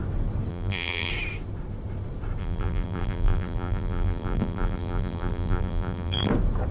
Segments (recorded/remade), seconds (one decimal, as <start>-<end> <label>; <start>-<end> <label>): 0.0-0.5 recorded; 0.5-1.1 remade; 1.1-2.4 recorded; 2.4-6.3 remade; 6.3-6.7 recorded